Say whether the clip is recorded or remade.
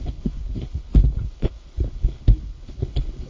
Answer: remade